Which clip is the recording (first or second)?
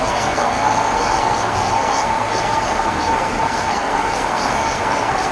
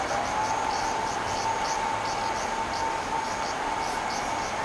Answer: second